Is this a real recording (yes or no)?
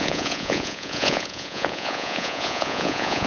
no